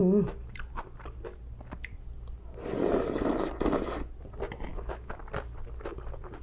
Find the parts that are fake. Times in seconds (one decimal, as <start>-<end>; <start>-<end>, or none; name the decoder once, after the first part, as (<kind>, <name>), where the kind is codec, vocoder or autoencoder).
4.7-5.2 (autoencoder, DAC-VAE)